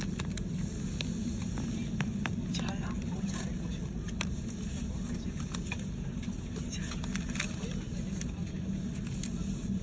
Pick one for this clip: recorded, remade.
recorded